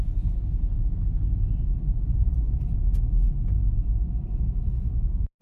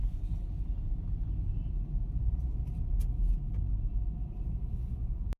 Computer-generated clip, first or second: first